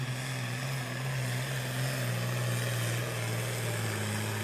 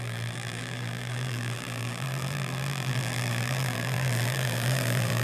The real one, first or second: first